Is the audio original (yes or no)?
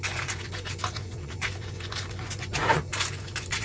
no